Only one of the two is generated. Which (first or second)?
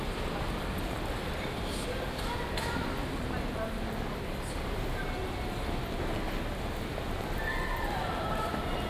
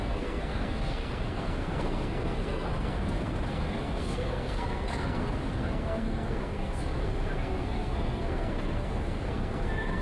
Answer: second